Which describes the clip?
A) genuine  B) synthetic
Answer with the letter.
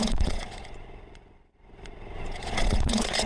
B